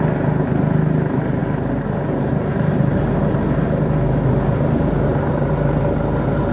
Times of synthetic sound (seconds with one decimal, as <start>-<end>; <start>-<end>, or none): none